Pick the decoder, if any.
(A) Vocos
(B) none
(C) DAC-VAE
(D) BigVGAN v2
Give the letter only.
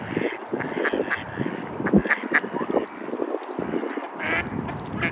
B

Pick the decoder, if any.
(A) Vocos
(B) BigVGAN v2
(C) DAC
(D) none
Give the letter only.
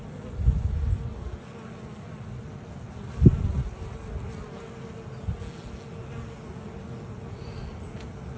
D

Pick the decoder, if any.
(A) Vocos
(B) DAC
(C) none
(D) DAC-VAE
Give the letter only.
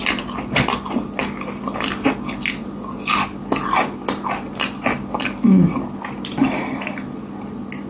C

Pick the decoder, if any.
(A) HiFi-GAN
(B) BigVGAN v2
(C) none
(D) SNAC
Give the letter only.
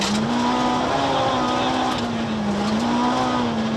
C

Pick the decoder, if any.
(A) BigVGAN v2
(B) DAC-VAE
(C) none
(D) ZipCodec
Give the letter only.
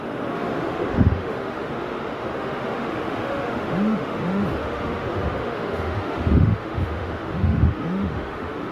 B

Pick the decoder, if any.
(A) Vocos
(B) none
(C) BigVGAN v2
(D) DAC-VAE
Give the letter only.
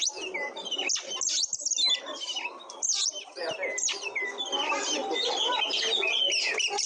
B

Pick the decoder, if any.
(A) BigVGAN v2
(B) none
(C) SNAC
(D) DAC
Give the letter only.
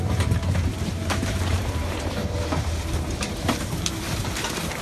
A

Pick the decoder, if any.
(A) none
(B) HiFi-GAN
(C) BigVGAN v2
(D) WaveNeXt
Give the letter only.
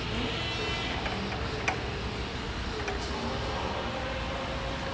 A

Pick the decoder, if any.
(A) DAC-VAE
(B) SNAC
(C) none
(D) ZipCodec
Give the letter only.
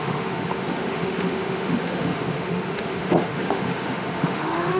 A